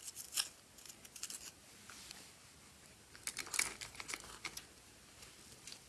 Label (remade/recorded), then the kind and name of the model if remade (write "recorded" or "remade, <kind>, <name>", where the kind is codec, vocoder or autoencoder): recorded